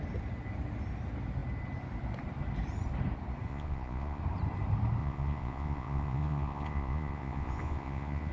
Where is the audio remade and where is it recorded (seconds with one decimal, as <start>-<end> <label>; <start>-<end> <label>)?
0.0-3.5 recorded; 3.5-4.2 remade; 4.2-5.0 recorded; 5.0-8.3 remade